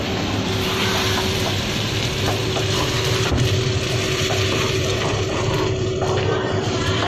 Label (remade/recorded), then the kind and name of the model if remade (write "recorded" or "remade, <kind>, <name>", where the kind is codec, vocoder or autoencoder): remade, vocoder, BigVGAN v2